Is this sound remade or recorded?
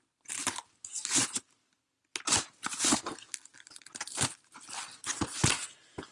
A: recorded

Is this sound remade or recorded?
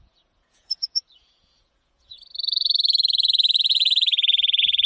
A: remade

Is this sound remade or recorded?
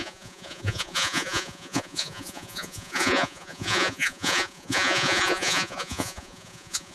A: remade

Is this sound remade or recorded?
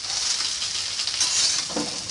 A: recorded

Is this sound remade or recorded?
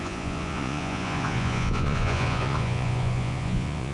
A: remade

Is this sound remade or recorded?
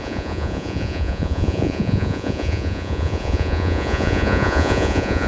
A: remade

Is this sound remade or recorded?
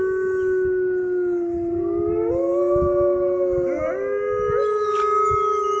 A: recorded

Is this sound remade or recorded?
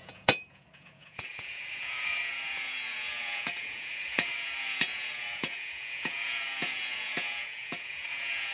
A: remade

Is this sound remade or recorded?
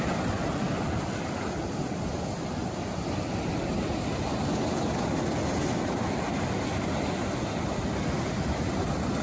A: recorded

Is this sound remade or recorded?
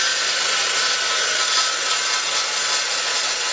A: recorded